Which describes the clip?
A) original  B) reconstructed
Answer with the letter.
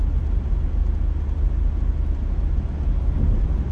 A